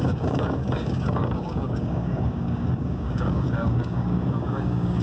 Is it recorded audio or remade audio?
remade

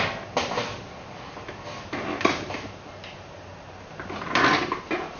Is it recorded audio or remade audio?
recorded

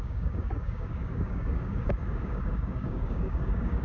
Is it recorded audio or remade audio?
remade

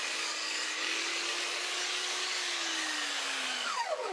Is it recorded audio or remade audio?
remade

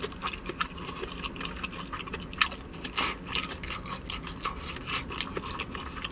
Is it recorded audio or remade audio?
recorded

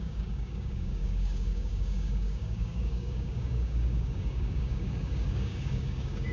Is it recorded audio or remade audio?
remade